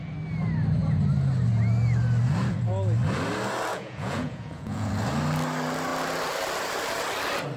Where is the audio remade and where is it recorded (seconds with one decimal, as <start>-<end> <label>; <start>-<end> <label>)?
0.0-3.7 recorded; 3.7-4.9 remade; 4.9-7.6 recorded